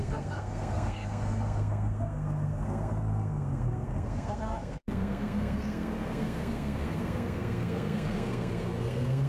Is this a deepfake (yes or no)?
yes